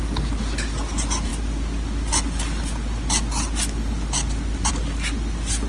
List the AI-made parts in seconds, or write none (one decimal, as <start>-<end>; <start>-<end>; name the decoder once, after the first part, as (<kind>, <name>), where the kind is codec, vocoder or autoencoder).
none